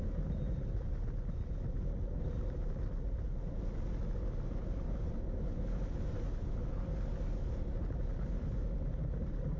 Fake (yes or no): no